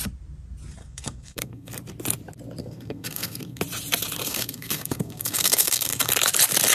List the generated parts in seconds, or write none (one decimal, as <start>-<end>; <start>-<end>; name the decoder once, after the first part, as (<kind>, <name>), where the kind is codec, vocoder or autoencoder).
0.8-1.7 (codec, SNAC); 2.6-3.6; 4.2-6.1